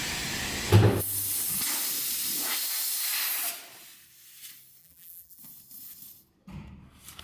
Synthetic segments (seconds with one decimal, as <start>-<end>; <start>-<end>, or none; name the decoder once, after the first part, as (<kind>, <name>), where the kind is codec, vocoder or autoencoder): 4.8-5.4 (vocoder, BigVGAN v2)